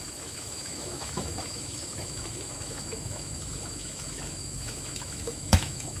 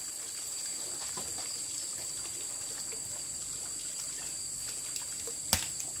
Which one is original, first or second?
second